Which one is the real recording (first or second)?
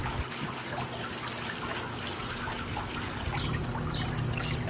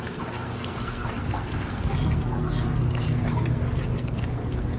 first